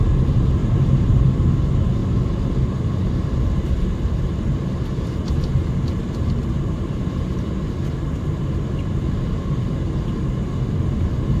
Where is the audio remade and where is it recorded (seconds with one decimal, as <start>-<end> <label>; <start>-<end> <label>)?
0.0-0.6 recorded; 0.6-1.2 remade; 1.2-11.4 recorded